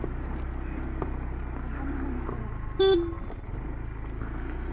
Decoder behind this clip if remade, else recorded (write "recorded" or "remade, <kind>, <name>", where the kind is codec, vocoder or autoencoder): recorded